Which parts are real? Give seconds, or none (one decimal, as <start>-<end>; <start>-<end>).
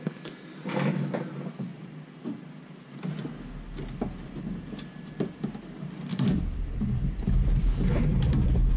0.0-6.1